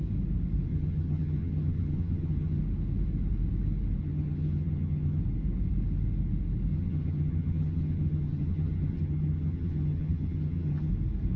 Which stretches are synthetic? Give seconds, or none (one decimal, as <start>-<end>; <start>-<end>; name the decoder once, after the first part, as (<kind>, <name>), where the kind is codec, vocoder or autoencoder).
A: 0.7-2.6 (vocoder, HiFi-GAN); 4.0-5.2; 6.7-10.9